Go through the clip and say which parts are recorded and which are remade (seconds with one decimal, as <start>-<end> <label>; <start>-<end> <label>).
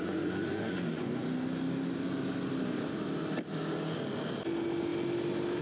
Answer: 0.0-1.1 remade; 1.1-5.6 recorded